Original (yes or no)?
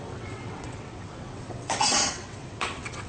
no